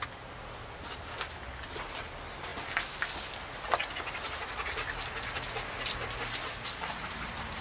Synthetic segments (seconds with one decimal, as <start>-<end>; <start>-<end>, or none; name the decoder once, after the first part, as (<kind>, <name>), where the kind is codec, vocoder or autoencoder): none